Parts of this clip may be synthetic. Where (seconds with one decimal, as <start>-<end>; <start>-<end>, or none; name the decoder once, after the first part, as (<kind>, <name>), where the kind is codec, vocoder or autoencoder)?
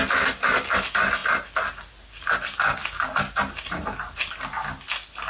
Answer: none